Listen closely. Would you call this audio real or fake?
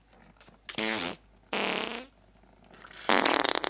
real